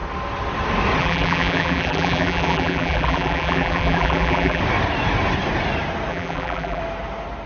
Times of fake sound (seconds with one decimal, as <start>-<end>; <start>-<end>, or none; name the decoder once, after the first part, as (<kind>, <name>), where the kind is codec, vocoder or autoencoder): 1.0-4.6 (vocoder, BigVGAN v2); 6.1-6.8